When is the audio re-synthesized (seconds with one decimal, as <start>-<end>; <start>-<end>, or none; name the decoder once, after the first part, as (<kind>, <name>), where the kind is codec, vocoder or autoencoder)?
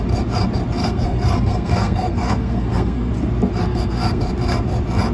0.8-3.1 (codec, SNAC); 3.6-4.2